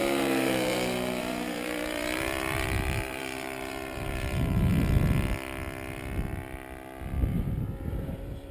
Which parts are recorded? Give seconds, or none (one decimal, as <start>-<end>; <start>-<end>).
4.7-7.3

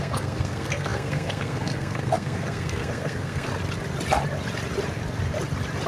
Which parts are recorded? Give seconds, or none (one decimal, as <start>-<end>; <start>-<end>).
3.5-5.9

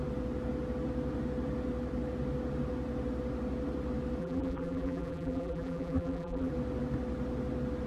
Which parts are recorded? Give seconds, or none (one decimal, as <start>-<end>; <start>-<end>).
0.0-4.2; 6.5-7.9

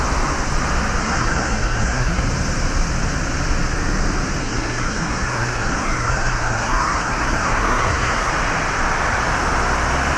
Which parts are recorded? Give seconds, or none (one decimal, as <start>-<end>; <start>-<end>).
0.0-1.0; 2.2-4.4; 8.3-10.2

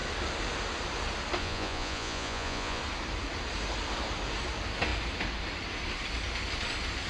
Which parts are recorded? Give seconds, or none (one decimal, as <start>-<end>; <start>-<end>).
0.0-1.4; 2.8-7.1

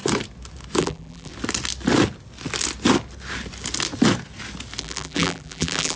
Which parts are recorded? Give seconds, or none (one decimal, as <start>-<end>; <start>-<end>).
0.0-0.8; 1.3-4.8